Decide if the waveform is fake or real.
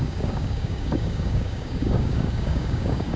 fake